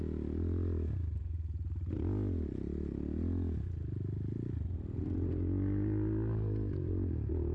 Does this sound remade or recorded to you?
recorded